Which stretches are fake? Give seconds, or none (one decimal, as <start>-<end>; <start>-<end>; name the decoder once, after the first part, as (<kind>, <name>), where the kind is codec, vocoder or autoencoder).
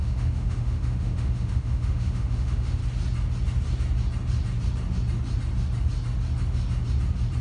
0.0-2.8 (autoencoder, DAC-VAE)